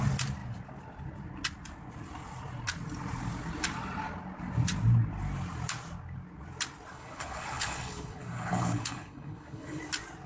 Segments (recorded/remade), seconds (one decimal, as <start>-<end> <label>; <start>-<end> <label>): 0.0-6.9 recorded; 6.9-9.8 remade; 9.8-10.3 recorded